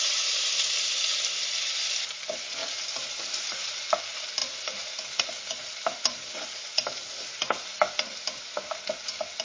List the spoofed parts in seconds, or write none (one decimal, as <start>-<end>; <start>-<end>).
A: 1.1-1.7; 2.6-4.0; 4.4-5.2